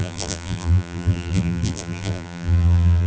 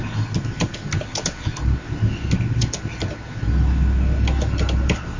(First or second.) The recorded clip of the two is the second